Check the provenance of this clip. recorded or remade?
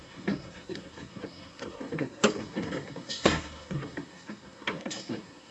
remade